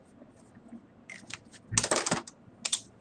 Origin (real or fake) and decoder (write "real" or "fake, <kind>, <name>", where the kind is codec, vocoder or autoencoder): real